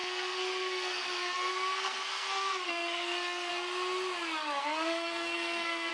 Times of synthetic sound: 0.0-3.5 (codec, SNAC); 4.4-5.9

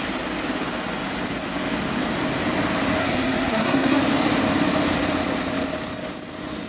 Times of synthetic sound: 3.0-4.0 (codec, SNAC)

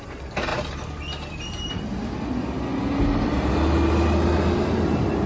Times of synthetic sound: none

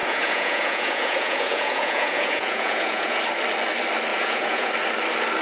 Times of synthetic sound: 0.0-3.2 (vocoder, Vocos); 4.1-4.7

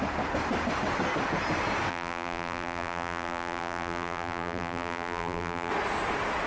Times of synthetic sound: 1.9-5.7 (vocoder, BigVGAN v2)

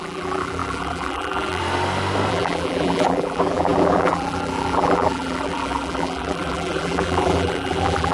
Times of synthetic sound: 0.0-1.6 (vocoder, BigVGAN v2); 2.3-8.1

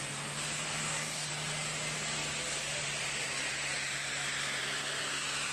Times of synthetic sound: 0.8-1.3 (codec, DAC)

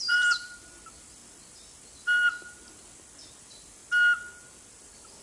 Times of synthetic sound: 0.0-1.2 (vocoder, BigVGAN v2); 3.4-3.8; 4.8-5.2